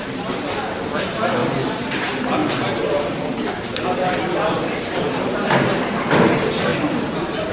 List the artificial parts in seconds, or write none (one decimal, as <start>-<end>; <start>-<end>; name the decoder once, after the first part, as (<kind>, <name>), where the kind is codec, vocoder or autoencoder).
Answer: none